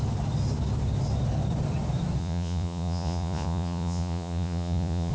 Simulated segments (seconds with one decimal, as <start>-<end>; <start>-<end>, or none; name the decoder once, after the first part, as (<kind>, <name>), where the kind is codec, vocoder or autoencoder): 2.2-5.1 (vocoder, Vocos)